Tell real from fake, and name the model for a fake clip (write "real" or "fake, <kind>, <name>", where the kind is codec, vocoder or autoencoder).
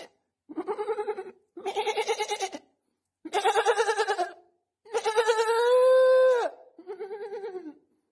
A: real